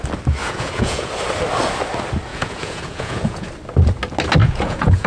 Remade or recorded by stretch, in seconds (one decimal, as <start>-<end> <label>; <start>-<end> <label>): 0.0-0.4 recorded; 0.4-1.1 remade; 1.1-2.3 recorded; 2.3-3.5 remade; 3.5-4.4 recorded; 4.4-5.1 remade